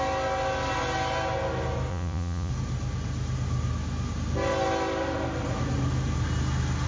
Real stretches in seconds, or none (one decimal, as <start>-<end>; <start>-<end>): 0.0-1.9; 2.5-6.9